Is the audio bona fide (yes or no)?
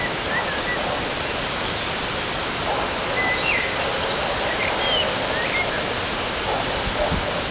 yes